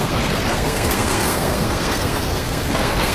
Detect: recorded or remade remade